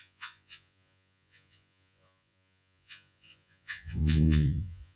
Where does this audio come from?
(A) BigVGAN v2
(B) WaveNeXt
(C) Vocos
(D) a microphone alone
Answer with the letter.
C